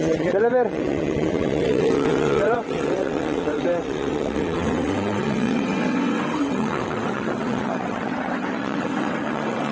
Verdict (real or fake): fake